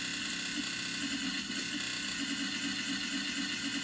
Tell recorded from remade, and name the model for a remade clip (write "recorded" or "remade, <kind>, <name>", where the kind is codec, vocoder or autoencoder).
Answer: recorded